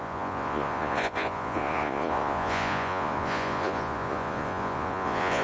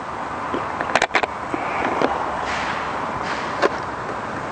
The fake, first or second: first